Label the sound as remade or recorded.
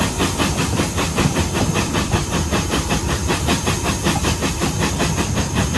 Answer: recorded